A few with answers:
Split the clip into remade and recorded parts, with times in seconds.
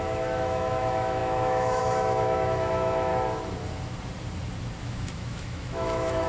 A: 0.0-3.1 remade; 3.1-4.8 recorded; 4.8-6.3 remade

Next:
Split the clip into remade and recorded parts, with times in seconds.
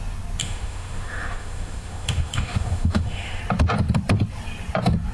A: 0.0-0.4 recorded; 0.4-3.4 remade; 3.4-5.1 recorded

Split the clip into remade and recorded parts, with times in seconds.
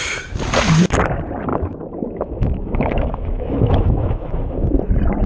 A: 0.0-1.5 recorded; 1.5-4.7 remade; 4.7-5.3 recorded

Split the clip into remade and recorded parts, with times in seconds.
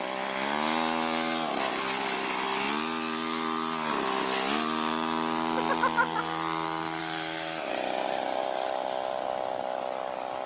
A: 0.0-7.0 recorded; 7.0-7.7 remade; 7.7-10.5 recorded